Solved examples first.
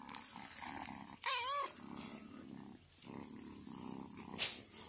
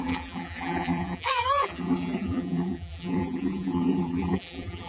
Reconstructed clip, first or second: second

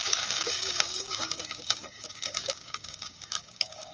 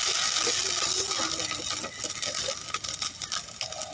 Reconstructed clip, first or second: first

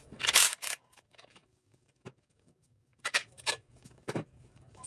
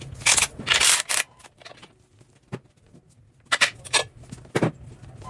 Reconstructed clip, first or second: first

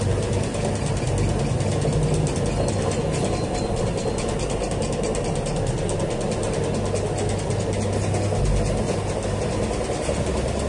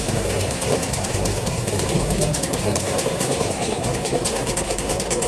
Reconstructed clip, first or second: second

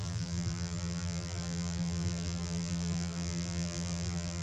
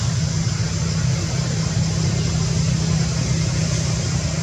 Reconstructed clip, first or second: first